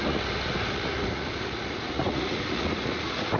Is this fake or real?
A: fake